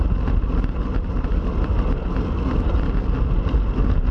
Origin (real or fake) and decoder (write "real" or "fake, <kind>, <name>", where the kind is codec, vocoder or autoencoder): real